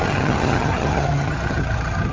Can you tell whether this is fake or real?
fake